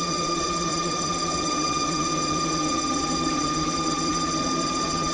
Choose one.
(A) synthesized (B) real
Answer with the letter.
A